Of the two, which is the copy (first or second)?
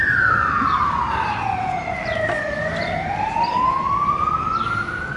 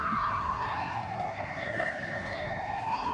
second